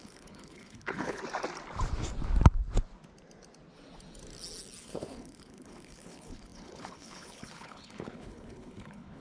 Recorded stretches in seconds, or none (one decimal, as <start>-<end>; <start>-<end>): 1.2-4.8